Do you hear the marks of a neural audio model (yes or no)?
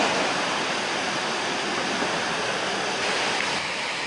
no